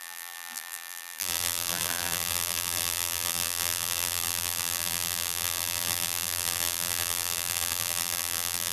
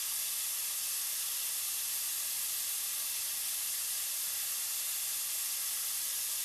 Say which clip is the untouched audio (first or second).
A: second